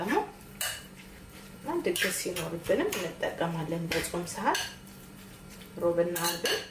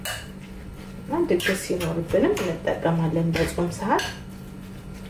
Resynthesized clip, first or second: first